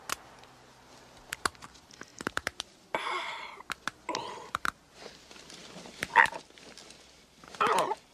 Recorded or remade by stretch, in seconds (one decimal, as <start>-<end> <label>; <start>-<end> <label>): 0.0-8.1 recorded